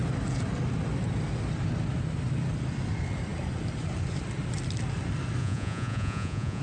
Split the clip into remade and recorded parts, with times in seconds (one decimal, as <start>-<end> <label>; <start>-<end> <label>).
0.0-5.4 recorded; 5.4-6.6 remade